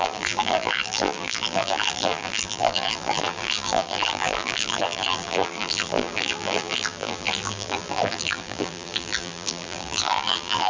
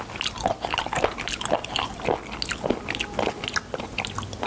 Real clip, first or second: second